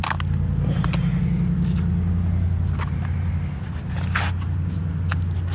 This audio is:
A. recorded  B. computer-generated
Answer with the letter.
A